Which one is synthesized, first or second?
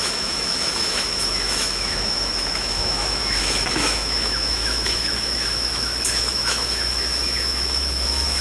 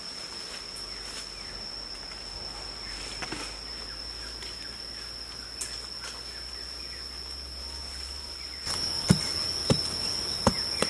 first